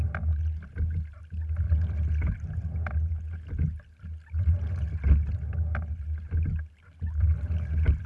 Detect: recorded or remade recorded